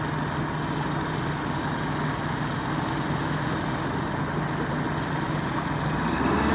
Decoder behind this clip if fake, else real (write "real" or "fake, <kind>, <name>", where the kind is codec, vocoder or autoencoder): real